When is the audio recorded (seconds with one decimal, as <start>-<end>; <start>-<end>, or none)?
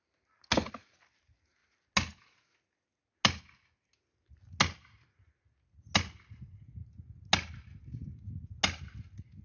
0.0-9.4